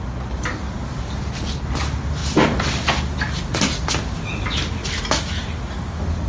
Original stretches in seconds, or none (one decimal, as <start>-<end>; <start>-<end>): 0.0-6.3